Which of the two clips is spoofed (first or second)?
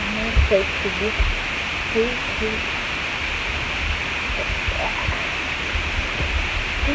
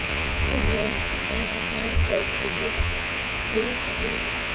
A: second